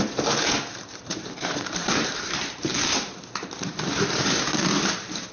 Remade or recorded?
remade